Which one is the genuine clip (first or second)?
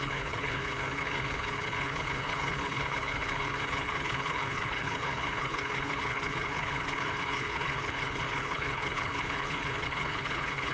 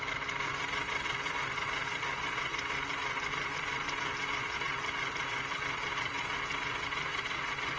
second